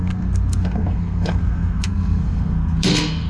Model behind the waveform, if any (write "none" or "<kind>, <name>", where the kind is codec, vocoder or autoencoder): codec, SNAC